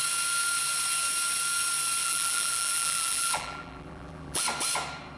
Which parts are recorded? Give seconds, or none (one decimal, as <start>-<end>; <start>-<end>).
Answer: 0.0-2.0; 4.4-5.2